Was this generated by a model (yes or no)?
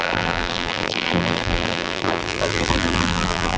yes